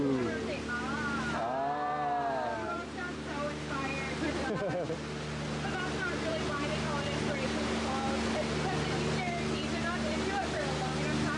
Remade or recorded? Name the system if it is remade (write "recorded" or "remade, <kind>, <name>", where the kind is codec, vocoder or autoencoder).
recorded